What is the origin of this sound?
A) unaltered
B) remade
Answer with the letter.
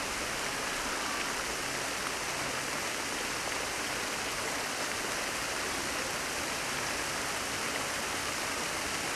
A